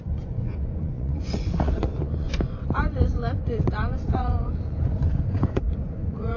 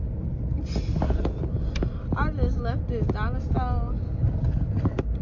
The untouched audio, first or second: second